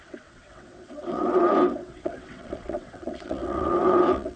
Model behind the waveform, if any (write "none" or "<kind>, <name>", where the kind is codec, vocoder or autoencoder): vocoder, WaveNeXt